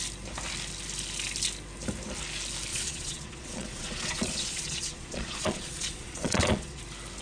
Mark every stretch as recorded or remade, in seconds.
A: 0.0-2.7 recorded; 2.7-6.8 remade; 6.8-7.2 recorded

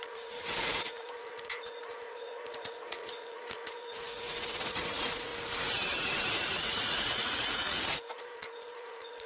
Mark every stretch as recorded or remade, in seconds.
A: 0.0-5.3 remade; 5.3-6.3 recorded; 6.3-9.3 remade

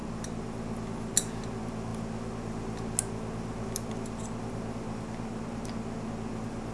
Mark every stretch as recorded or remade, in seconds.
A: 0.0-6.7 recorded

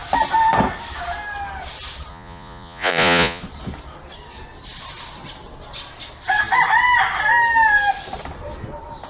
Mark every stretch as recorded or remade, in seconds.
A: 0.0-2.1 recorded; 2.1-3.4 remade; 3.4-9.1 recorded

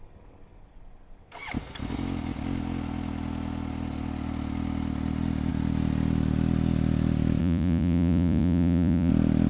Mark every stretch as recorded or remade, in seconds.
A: 0.0-7.4 recorded; 7.4-9.1 remade; 9.1-9.5 recorded